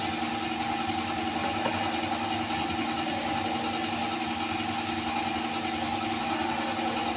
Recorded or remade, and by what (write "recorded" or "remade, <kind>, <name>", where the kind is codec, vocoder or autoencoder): recorded